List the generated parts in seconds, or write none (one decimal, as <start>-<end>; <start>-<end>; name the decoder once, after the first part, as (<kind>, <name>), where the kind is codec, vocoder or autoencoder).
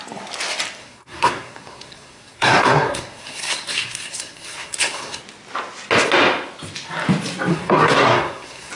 0.8-5.2 (codec, SNAC); 7.5-8.7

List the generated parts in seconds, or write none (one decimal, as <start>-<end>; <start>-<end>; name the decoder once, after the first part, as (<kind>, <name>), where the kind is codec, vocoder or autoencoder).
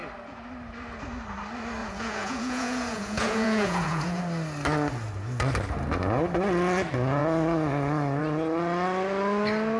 1.8-4.2 (vocoder, Vocos)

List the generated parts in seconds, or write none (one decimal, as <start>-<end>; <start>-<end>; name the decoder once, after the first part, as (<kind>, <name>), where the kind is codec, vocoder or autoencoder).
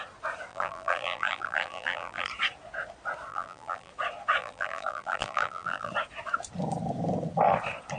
0.5-2.3 (vocoder, BigVGAN v2); 3.3-3.9; 4.4-5.9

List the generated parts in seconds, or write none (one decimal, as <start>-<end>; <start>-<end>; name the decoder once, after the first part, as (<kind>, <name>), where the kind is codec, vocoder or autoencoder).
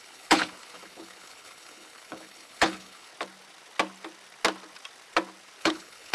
0.0-3.1 (codec, HILCodec); 5.6-6.1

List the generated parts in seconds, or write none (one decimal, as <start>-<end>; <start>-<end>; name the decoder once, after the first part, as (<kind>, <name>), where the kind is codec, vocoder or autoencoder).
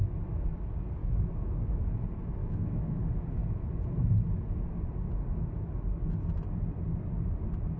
1.0-1.9 (autoencoder, DAC-VAE); 2.4-3.0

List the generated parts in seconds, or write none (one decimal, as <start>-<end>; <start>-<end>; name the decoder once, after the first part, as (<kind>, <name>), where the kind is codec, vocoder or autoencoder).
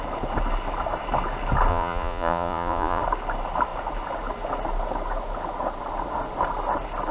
1.7-3.0 (vocoder, Vocos)